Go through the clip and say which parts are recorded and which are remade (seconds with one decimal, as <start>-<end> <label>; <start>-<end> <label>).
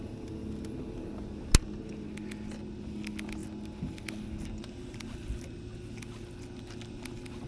0.0-7.5 recorded